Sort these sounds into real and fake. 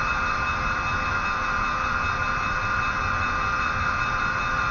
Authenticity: real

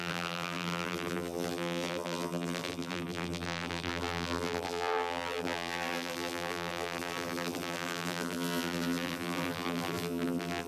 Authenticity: fake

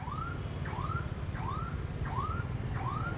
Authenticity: real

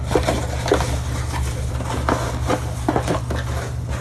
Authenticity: real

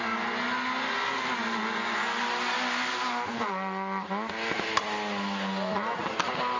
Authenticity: real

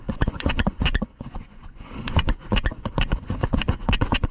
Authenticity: fake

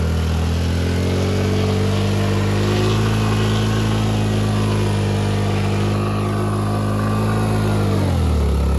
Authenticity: real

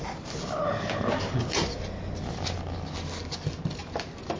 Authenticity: real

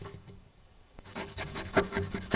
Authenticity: fake